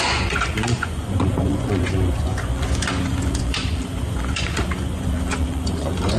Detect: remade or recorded remade